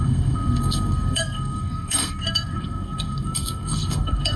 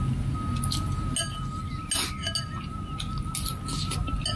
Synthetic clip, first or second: first